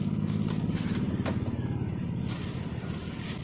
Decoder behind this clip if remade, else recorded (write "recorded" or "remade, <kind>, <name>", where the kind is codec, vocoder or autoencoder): recorded